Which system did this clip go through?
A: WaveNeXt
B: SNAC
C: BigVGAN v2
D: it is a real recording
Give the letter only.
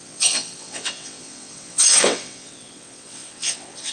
A